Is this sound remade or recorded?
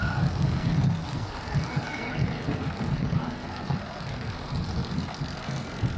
remade